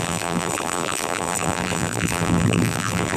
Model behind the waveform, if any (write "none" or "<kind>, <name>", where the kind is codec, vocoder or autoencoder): vocoder, BigVGAN v2